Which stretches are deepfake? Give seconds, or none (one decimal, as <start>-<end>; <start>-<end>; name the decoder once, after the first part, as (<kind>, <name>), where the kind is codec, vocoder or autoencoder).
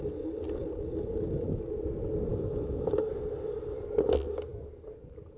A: 2.3-3.1 (autoencoder, DAC-VAE)